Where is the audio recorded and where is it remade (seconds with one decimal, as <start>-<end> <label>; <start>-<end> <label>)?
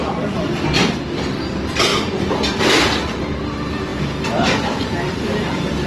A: 0.0-5.9 recorded